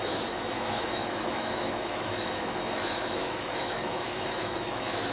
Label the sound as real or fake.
fake